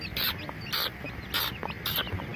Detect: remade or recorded recorded